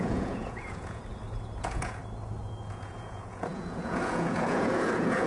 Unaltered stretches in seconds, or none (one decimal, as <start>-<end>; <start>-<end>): 1.0-1.6; 2.0-2.7